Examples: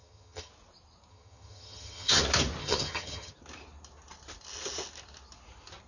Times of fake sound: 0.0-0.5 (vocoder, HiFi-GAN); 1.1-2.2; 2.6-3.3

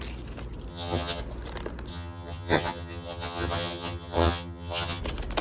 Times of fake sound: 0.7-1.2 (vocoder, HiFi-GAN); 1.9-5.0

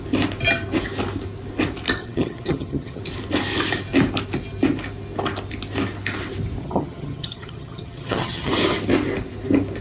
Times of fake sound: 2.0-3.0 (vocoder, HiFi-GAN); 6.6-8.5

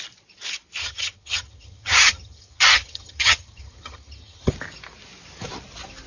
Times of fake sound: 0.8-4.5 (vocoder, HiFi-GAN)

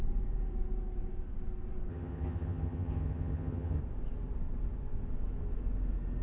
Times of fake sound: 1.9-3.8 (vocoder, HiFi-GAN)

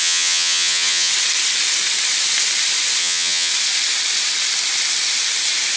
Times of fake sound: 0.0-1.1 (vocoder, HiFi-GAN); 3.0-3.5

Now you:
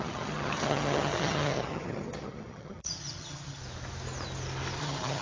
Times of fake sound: 0.0-3.6 (vocoder, HiFi-GAN); 4.8-5.2

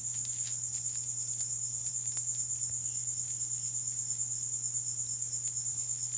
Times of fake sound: none